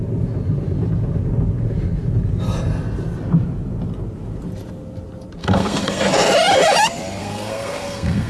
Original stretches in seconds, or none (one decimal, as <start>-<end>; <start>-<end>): 0.0-5.4; 6.0-7.2